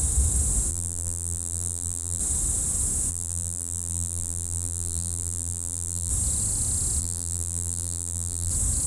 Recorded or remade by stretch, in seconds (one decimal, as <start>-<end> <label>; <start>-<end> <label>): 0.0-0.7 recorded; 0.7-2.2 remade; 2.2-3.1 recorded; 3.1-6.1 remade; 6.1-7.0 recorded; 7.0-8.5 remade; 8.5-8.9 recorded

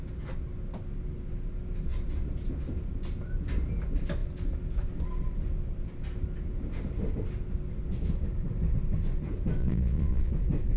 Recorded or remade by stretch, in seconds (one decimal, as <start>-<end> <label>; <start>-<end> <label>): 0.0-9.6 recorded; 9.6-10.3 remade; 10.3-10.8 recorded